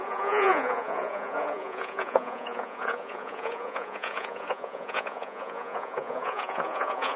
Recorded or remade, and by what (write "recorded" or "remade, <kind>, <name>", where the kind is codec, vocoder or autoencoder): remade, vocoder, Vocos